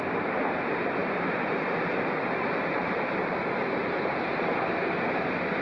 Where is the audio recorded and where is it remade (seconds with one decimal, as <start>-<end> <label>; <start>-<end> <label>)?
0.0-1.0 recorded; 1.0-4.4 remade; 4.4-5.6 recorded